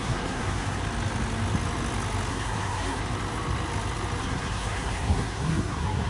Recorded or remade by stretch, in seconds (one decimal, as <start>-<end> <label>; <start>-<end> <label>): 0.0-0.8 remade; 0.8-2.3 recorded; 2.3-3.0 remade; 3.0-4.2 recorded; 4.2-6.1 remade